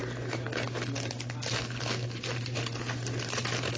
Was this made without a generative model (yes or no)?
yes